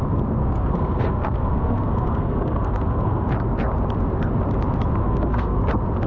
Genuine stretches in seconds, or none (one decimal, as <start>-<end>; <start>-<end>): 0.0-0.4; 3.3-5.0; 5.6-6.1